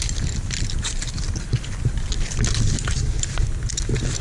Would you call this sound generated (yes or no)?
no